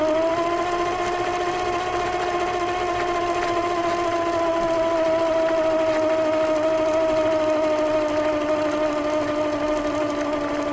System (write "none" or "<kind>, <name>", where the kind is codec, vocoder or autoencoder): none